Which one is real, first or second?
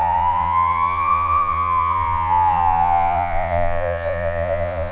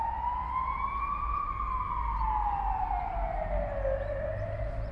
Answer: second